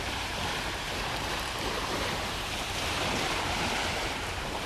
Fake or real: fake